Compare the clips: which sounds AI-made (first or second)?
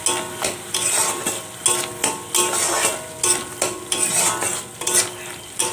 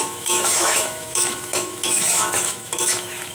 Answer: second